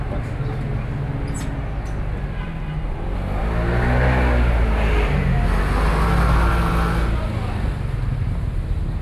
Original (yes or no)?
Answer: yes